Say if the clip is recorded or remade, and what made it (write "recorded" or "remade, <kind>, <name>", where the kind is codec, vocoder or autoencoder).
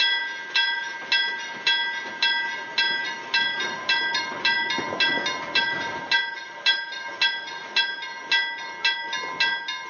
recorded